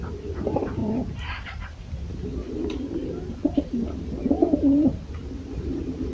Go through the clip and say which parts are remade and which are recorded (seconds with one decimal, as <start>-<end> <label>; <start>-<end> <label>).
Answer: 0.0-3.0 remade; 3.0-4.6 recorded; 4.6-6.1 remade